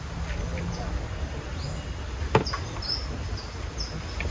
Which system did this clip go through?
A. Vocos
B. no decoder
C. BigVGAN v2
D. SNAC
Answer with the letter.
B